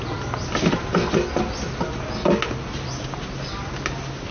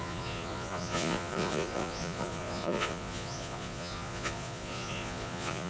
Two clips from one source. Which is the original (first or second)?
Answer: first